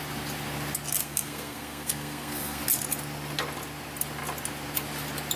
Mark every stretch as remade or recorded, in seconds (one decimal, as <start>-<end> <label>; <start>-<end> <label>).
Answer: 0.0-1.0 recorded; 1.0-2.6 remade; 2.6-5.4 recorded